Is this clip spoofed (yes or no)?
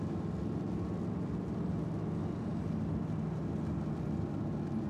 no